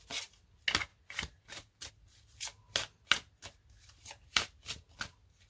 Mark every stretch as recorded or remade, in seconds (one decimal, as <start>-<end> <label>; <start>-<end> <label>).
0.0-5.5 recorded